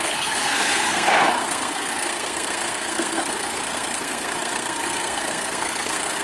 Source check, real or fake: fake